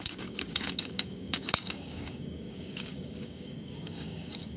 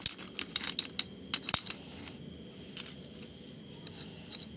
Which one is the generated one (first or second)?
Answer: first